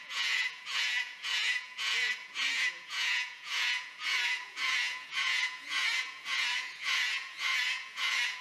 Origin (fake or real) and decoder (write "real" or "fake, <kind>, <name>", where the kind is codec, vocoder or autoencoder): fake, vocoder, Vocos